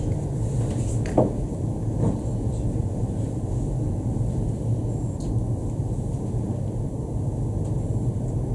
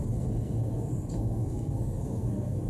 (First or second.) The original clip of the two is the first